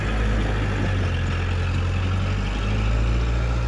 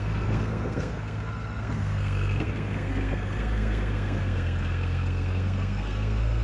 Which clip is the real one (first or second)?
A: first